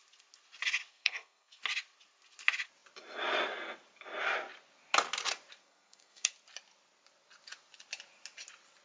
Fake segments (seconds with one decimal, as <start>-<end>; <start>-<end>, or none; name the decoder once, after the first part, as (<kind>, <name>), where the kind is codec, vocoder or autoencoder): 0.9-1.6 (codec, SNAC); 5.6-6.3